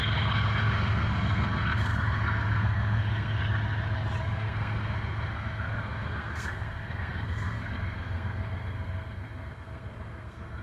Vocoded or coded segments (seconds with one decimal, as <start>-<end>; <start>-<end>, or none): 0.0-3.4; 4.2-10.6